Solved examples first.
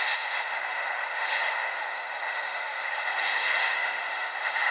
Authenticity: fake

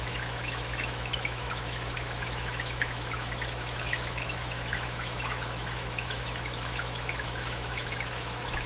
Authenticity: fake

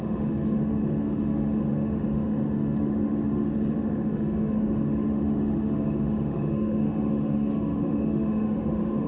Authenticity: fake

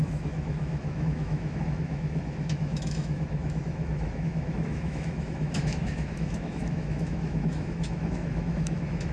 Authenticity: fake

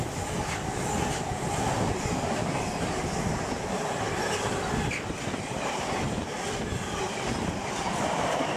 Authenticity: real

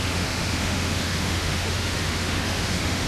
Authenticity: fake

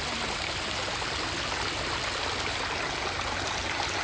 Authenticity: real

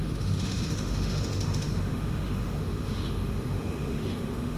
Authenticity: fake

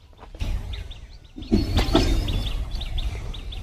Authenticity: real